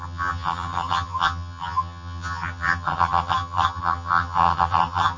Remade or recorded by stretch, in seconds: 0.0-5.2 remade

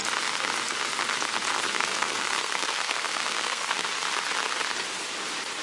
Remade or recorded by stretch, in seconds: 0.0-1.5 recorded; 1.5-3.9 remade; 3.9-5.6 recorded

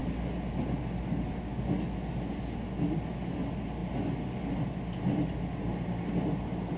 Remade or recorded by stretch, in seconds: 0.0-6.8 recorded

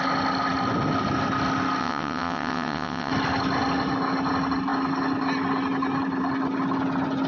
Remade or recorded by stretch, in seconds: 0.0-1.8 recorded; 1.8-3.1 remade; 3.1-7.3 recorded

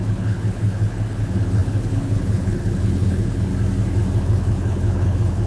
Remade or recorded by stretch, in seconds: 0.0-3.5 remade; 3.5-4.2 recorded; 4.2-5.5 remade